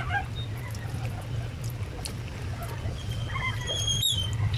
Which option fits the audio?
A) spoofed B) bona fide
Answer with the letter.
B